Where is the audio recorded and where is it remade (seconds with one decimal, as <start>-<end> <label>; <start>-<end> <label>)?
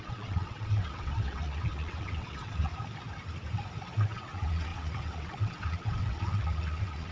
0.0-2.7 remade; 2.7-3.8 recorded; 3.8-7.1 remade